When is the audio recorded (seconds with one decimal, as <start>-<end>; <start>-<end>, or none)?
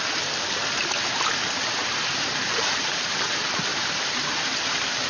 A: 0.0-1.8; 3.3-3.7; 4.5-5.1